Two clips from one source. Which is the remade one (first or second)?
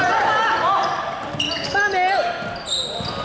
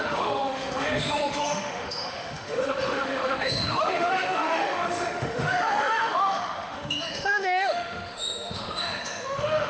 second